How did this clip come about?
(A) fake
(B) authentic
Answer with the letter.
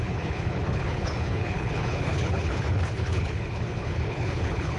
A